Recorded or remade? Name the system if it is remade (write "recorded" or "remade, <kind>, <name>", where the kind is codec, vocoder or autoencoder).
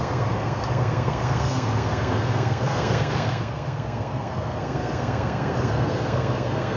remade, codec, SNAC